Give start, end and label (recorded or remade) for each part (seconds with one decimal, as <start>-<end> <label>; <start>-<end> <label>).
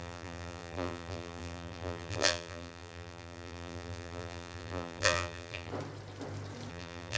0.0-5.7 remade; 5.7-6.7 recorded; 6.7-7.2 remade